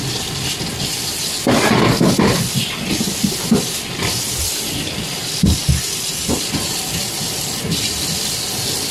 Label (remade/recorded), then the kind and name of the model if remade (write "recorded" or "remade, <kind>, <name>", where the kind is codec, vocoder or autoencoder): recorded